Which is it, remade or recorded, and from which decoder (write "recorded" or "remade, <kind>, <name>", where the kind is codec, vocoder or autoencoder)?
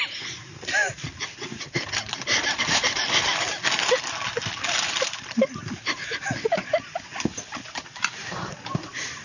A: remade, vocoder, BigVGAN v2